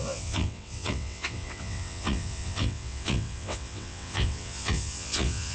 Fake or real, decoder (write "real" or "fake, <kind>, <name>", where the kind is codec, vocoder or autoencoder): fake, vocoder, WaveNeXt